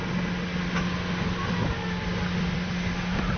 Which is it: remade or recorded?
recorded